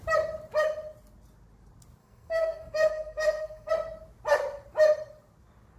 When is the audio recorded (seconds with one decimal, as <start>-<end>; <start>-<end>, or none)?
0.0-2.0; 3.7-5.8